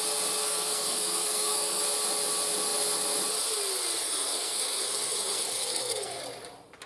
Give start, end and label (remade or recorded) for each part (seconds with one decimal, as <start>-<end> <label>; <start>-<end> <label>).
0.0-0.4 recorded; 0.4-1.8 remade; 1.8-4.0 recorded; 4.0-6.2 remade; 6.2-6.9 recorded